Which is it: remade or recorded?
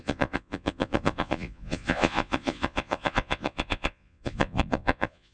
remade